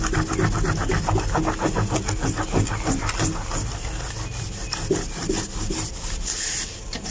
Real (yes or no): yes